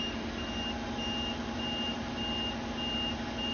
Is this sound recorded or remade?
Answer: recorded